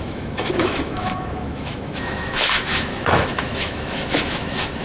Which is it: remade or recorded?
remade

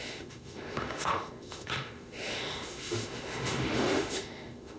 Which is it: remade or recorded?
remade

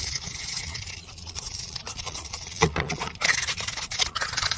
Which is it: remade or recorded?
remade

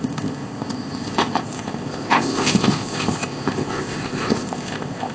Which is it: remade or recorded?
remade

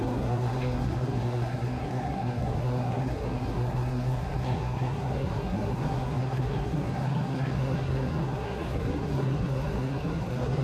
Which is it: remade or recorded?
remade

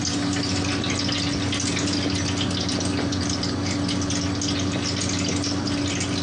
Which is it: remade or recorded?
recorded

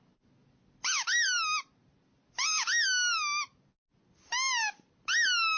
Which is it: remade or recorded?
recorded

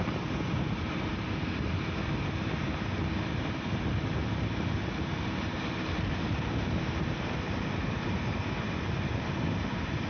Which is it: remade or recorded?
remade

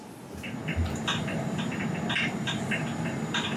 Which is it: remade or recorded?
recorded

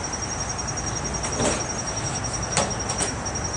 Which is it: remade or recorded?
recorded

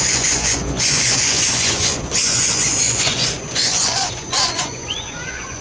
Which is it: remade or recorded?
remade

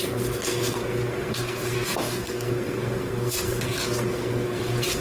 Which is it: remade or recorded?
remade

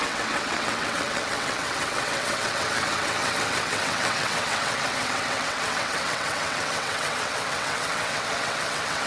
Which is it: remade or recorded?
remade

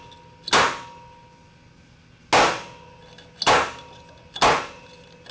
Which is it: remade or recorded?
recorded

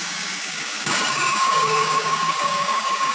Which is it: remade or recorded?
remade